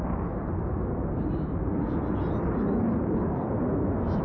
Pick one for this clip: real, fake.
real